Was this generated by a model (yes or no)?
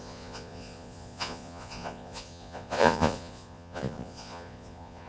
yes